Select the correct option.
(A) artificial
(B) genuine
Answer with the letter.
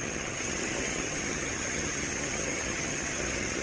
A